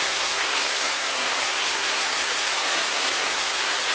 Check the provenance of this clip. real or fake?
fake